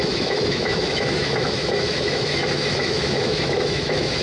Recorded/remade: remade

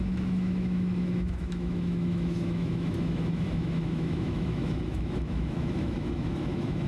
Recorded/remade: remade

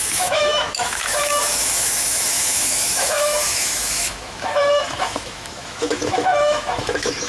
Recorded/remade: remade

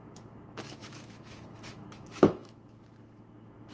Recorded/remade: remade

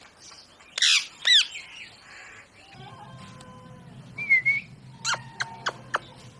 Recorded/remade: recorded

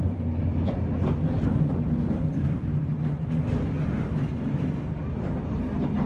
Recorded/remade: recorded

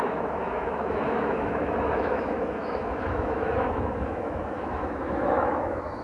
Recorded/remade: remade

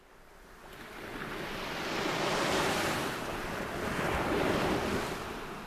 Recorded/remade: recorded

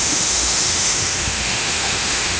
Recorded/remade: remade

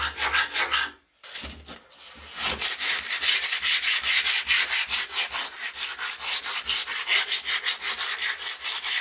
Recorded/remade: recorded